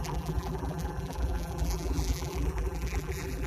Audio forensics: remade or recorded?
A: remade